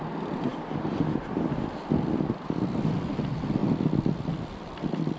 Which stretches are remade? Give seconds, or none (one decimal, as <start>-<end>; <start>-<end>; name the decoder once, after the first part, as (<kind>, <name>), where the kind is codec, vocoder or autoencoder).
0.0-0.5 (vocoder, BigVGAN v2); 2.9-3.6; 4.3-5.2